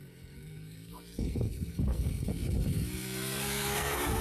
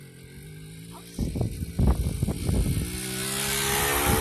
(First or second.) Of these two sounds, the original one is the second